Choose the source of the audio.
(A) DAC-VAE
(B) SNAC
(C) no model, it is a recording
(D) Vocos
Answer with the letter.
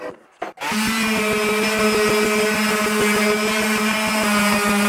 C